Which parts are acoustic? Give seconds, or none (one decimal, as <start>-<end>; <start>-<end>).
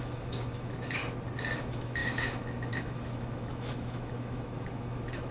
1.0-1.6